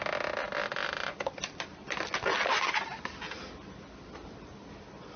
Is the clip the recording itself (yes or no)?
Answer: yes